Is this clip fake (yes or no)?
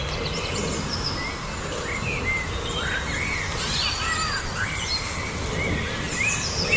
no